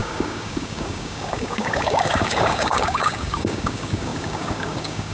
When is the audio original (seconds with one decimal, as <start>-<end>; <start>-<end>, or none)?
none